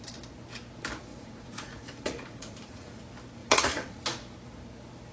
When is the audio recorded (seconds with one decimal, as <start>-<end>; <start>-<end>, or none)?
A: 0.0-1.1; 3.0-3.4; 4.0-5.1